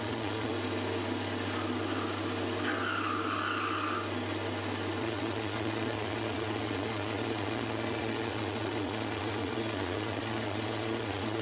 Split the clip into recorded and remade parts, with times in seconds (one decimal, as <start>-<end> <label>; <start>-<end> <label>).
0.0-0.5 remade; 0.5-5.0 recorded; 5.0-11.4 remade